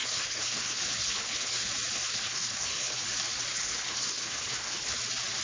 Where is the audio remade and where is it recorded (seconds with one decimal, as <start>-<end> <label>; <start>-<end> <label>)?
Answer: 0.0-1.7 remade; 1.7-2.1 recorded; 2.1-3.0 remade; 3.0-3.5 recorded; 3.5-5.0 remade; 5.0-5.4 recorded